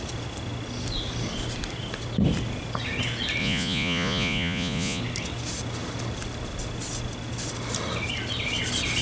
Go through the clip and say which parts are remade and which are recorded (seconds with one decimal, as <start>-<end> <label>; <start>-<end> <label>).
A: 0.0-3.4 recorded; 3.4-5.0 remade; 5.0-9.0 recorded